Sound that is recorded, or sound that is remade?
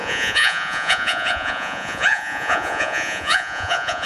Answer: remade